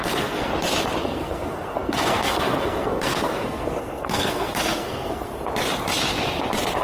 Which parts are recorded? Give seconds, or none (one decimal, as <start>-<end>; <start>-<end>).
0.5-1.0; 5.3-6.8